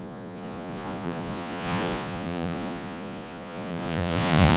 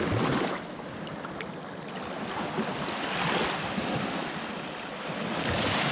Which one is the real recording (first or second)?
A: second